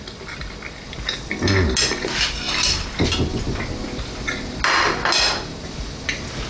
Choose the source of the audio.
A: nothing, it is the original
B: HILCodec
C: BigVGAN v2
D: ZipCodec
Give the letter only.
A